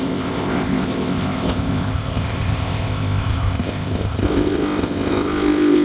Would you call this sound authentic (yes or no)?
no